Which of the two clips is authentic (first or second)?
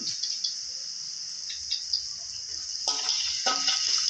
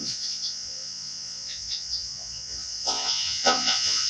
first